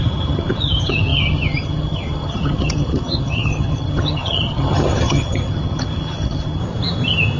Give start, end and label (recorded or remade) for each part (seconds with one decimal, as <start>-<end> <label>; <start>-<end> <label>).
0.0-6.6 remade; 6.6-7.4 recorded